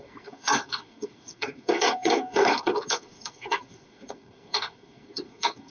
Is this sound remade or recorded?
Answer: remade